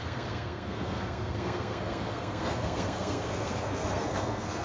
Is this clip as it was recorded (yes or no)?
no